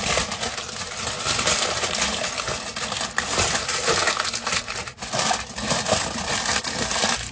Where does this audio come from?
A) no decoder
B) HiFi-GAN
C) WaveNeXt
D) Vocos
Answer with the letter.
A